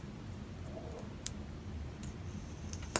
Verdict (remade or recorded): recorded